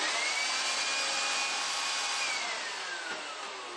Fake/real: real